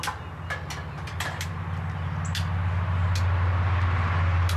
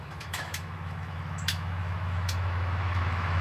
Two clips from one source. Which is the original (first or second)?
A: first